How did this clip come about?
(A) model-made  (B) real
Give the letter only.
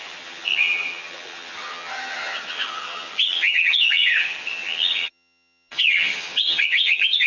A